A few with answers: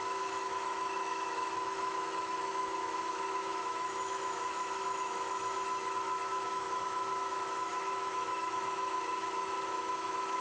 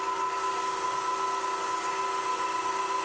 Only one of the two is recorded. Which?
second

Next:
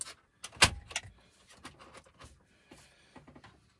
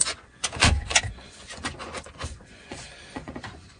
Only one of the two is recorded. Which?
first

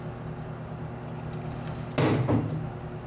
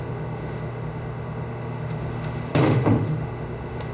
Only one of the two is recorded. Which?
first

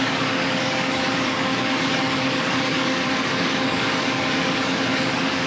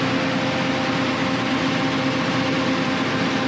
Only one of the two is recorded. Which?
second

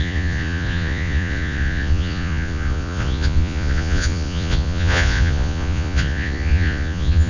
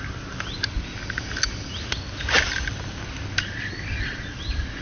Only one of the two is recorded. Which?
second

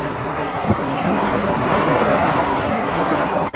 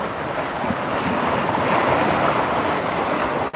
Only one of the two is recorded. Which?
second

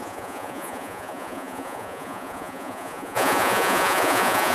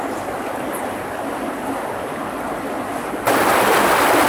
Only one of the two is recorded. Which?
second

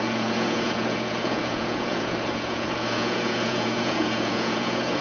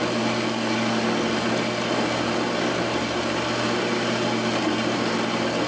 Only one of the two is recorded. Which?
second